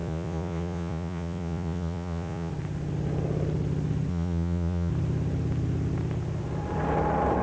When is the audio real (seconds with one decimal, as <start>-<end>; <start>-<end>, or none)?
2.5-4.1; 4.9-7.4